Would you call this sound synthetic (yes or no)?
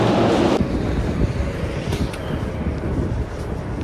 no